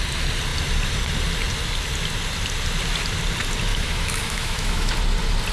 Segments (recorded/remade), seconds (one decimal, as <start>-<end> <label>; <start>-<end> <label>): 0.0-3.7 recorded; 3.7-4.9 remade; 4.9-5.5 recorded